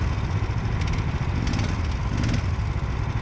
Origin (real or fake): real